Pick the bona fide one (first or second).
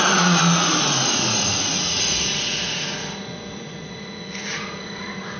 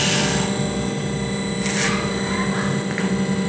second